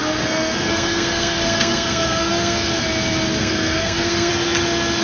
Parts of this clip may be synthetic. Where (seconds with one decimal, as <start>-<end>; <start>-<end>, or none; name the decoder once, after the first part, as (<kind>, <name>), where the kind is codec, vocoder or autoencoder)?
0.0-2.7 (codec, SNAC); 3.4-4.3